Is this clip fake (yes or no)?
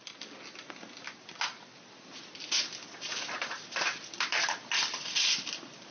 yes